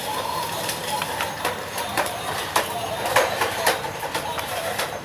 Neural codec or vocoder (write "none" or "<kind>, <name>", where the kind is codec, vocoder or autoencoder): vocoder, BigVGAN v2